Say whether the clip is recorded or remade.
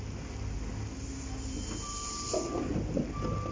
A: recorded